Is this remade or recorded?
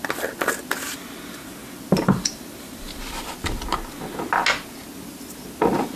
recorded